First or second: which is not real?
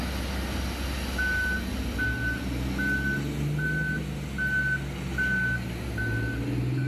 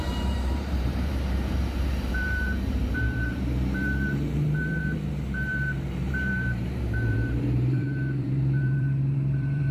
second